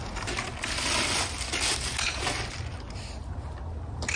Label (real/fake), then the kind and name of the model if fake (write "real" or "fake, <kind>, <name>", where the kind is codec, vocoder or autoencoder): real